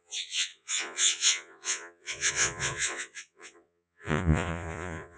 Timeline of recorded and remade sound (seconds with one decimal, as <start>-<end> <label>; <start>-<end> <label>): 0.0-5.2 remade